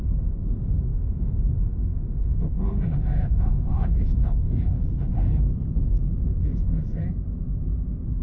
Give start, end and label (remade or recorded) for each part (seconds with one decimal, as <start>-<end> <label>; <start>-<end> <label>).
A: 0.0-5.3 remade; 5.3-6.4 recorded; 6.4-7.0 remade; 7.0-8.2 recorded